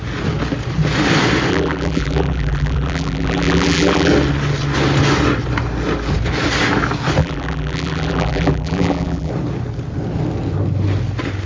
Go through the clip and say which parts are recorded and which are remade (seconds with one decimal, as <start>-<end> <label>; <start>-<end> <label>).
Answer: 0.0-1.5 recorded; 1.5-4.1 remade; 4.1-7.2 recorded; 7.2-9.3 remade; 9.3-11.5 recorded